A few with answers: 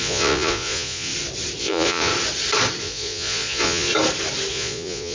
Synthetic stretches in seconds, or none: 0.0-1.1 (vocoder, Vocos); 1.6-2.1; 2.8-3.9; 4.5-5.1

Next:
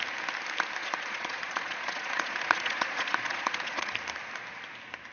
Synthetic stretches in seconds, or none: 0.8-3.9 (vocoder, Vocos)

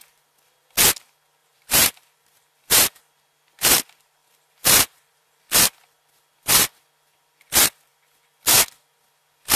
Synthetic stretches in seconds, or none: 1.4-3.0 (vocoder, BigVGAN v2); 4.2-5.5

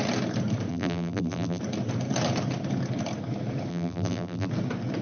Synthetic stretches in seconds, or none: 0.7-1.6 (vocoder, BigVGAN v2); 3.7-4.5

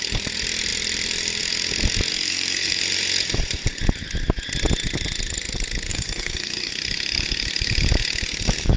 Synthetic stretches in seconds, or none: 2.1-2.8 (codec, SNAC); 5.9-6.7

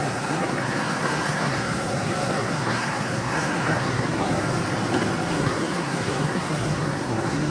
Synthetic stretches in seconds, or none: 0.0-4.4 (codec, SNAC); 5.3-7.5

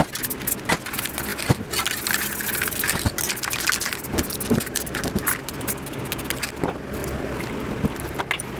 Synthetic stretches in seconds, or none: 7.0-8.2 (vocoder, BigVGAN v2)